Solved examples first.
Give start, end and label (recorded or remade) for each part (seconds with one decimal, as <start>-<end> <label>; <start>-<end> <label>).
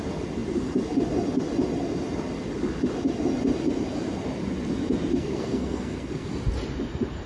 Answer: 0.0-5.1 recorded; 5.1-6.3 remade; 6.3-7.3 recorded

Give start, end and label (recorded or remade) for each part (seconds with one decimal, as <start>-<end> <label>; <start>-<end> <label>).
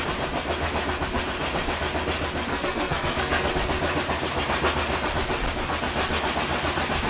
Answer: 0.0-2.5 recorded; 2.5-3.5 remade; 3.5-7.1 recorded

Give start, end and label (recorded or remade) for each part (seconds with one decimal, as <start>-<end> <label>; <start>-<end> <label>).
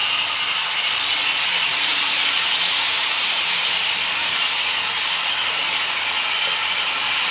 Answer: 0.0-1.1 remade; 1.1-1.9 recorded; 1.9-3.8 remade; 3.8-7.3 recorded